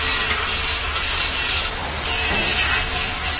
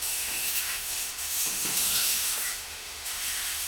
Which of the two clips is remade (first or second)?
second